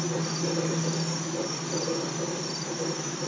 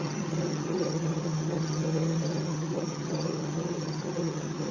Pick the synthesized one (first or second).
second